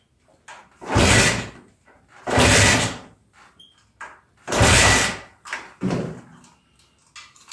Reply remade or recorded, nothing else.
recorded